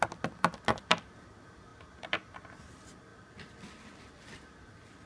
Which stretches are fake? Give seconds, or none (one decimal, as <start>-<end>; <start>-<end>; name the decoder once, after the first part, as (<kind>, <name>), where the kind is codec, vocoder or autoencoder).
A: none